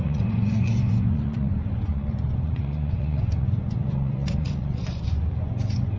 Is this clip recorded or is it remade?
remade